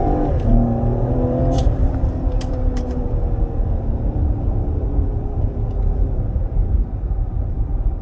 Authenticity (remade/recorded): remade